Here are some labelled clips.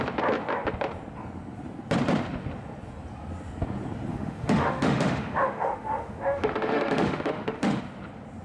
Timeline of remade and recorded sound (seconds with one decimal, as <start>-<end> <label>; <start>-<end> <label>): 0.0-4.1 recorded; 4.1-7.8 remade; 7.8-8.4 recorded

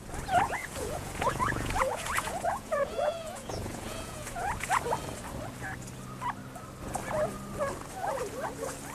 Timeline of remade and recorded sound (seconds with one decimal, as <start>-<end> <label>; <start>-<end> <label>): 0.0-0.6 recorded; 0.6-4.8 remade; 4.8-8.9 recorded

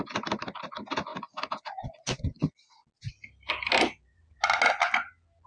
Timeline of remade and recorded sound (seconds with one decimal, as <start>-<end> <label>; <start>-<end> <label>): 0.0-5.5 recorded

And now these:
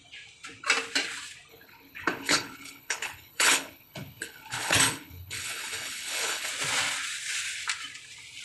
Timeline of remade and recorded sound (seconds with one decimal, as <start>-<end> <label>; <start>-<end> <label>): 0.0-1.5 recorded; 1.5-6.5 remade; 6.5-8.4 recorded

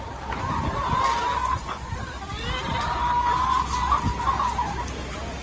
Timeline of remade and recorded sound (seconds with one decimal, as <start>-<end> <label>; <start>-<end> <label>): 0.0-1.4 recorded; 1.4-1.9 remade; 1.9-5.4 recorded

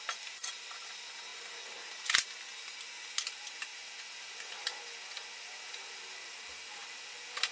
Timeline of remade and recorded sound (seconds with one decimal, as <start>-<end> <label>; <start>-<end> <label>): 0.0-7.5 recorded